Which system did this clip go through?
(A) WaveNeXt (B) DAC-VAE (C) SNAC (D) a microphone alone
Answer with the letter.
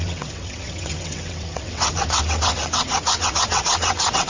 A